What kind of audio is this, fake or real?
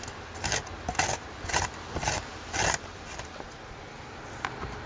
real